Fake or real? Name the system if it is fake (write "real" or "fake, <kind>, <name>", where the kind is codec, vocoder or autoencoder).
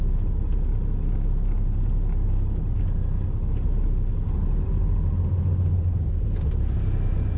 real